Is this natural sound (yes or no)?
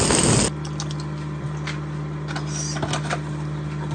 yes